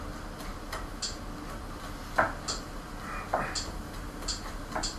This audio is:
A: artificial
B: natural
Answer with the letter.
B